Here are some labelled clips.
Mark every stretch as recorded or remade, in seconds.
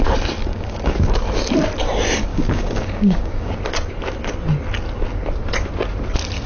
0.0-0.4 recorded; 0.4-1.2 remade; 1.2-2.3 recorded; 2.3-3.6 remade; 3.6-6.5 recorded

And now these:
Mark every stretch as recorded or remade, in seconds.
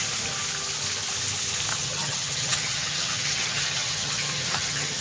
0.0-1.7 recorded; 1.7-5.0 remade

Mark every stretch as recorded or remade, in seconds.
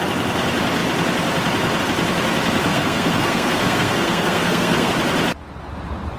0.0-2.7 recorded; 2.7-4.9 remade; 4.9-6.2 recorded